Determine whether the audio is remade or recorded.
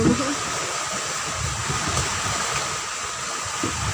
recorded